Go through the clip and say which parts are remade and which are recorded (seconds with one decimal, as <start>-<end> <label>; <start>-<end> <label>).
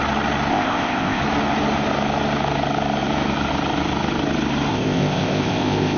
0.0-0.5 recorded; 0.5-1.2 remade; 1.2-4.7 recorded; 4.7-6.0 remade